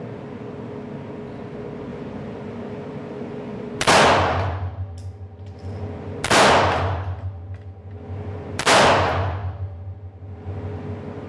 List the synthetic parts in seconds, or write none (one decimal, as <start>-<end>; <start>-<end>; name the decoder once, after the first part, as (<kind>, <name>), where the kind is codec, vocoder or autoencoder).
1.9-3.9 (vocoder, BigVGAN v2)